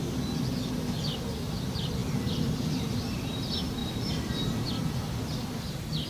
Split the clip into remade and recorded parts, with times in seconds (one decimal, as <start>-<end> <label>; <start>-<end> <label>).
0.0-6.1 recorded